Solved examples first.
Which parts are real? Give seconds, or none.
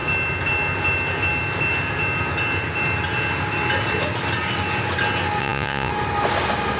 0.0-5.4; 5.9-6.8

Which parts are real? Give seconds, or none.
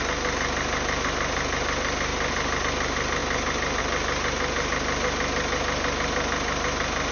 0.0-7.1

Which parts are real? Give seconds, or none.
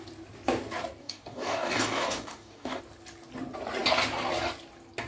0.0-1.0; 2.8-5.1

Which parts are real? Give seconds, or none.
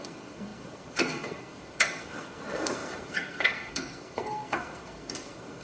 none